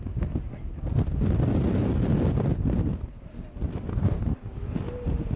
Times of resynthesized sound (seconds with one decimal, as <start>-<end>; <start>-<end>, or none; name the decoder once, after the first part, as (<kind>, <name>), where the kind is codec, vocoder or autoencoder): 3.9-4.5 (codec, DAC)